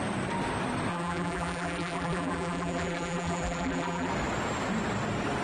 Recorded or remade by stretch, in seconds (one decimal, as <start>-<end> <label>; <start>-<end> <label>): 0.0-0.9 recorded; 0.9-4.1 remade; 4.1-5.4 recorded